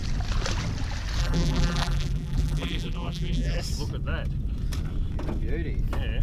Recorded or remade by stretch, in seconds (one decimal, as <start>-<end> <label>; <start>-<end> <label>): 0.0-1.2 recorded; 1.2-3.6 remade; 3.6-6.2 recorded